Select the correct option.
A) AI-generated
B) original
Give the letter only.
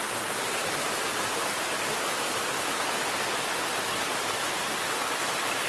B